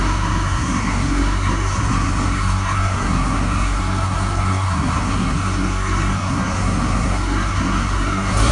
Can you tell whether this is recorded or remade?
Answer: remade